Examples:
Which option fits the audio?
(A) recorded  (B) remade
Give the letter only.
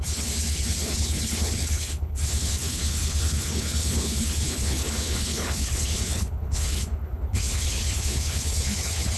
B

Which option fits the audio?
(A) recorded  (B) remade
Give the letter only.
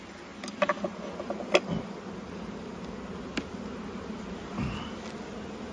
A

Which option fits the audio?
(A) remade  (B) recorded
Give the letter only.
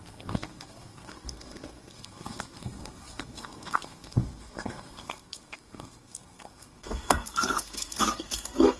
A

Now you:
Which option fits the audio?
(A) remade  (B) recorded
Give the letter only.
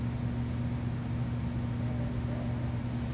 B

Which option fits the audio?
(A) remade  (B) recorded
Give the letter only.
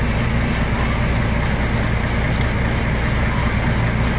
B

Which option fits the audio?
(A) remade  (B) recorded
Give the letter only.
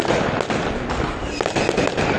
B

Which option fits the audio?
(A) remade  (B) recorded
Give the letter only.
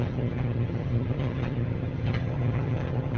A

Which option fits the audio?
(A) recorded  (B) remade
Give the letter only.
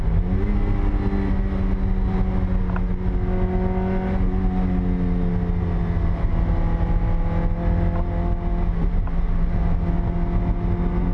A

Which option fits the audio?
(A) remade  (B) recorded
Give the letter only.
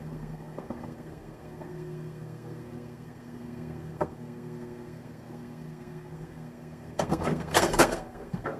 A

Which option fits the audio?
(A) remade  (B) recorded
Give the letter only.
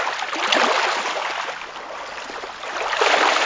B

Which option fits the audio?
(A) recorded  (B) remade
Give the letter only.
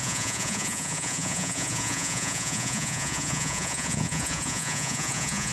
B